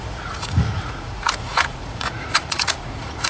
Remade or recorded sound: remade